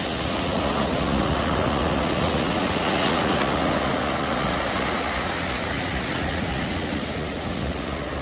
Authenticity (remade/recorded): remade